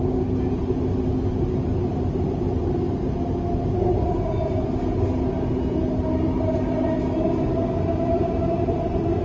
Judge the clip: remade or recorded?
recorded